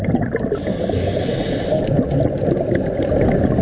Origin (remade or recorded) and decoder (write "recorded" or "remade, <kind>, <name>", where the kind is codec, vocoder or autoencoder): recorded